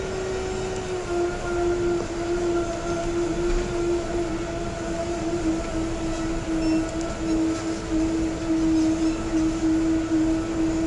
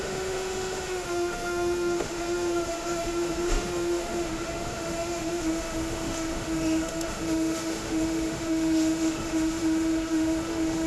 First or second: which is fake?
second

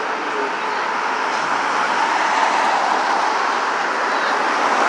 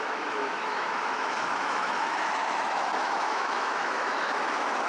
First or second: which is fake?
second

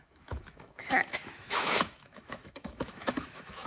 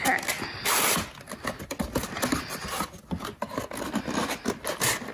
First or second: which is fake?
first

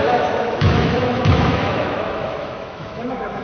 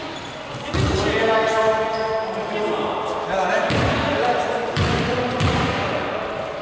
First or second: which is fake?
first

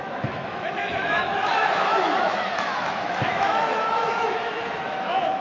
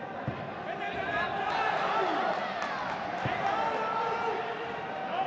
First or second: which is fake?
first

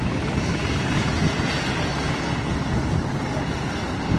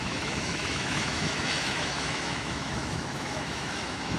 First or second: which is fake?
second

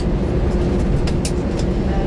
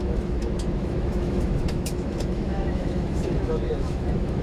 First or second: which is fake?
second